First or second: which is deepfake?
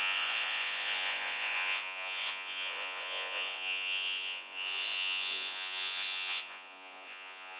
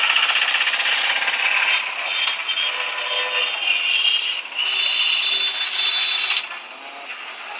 first